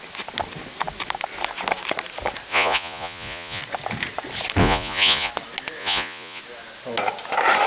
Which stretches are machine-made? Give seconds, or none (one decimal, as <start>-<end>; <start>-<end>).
2.5-3.6; 4.6-5.3; 5.8-6.4